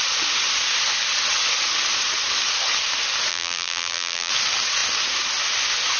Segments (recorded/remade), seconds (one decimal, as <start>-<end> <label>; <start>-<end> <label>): 0.0-3.3 recorded; 3.3-4.3 remade; 4.3-6.0 recorded